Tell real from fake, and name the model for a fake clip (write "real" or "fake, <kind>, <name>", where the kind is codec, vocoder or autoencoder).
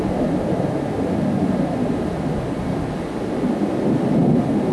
real